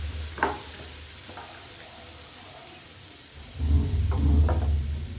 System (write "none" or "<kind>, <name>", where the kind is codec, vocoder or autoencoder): none